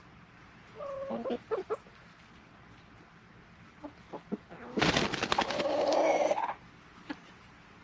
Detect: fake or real real